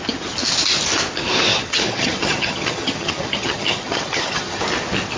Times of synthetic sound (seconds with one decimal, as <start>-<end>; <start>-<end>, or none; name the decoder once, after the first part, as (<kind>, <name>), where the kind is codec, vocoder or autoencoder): 1.5-4.6 (vocoder, HiFi-GAN)